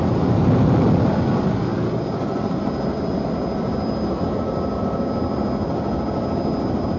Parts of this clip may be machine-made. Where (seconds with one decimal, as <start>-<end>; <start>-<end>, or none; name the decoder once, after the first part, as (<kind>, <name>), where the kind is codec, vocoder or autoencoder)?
none